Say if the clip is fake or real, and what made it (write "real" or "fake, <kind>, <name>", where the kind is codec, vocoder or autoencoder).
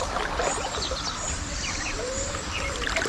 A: fake, vocoder, BigVGAN v2